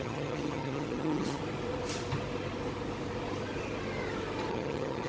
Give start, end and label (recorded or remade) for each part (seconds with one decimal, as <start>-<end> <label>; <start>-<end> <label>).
0.0-1.4 remade; 1.4-4.5 recorded; 4.5-5.1 remade